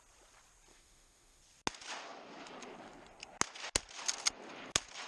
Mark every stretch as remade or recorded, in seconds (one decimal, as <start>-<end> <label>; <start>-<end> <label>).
0.0-0.7 recorded; 0.7-1.4 remade; 1.4-5.1 recorded